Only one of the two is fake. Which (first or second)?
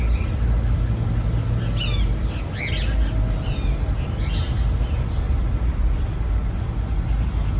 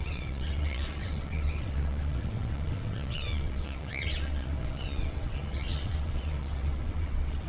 second